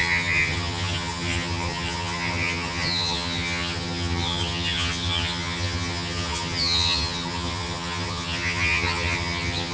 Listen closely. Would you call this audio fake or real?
fake